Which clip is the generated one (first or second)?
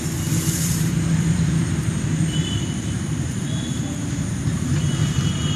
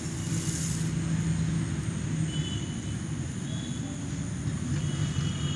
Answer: first